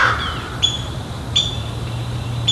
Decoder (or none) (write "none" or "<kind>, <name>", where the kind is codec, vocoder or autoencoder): vocoder, BigVGAN v2